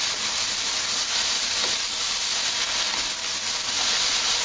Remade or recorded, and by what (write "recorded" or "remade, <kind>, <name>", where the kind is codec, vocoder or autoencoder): recorded